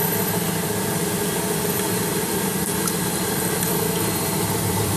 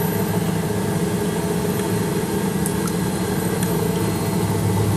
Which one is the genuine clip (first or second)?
second